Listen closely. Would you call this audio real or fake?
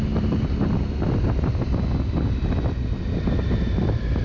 real